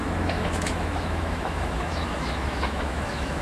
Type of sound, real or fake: fake